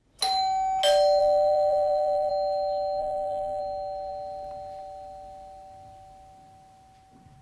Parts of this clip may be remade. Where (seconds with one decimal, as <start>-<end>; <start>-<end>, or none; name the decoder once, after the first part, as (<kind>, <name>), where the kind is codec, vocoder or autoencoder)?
1.2-2.3 (vocoder, BigVGAN v2); 3.0-3.6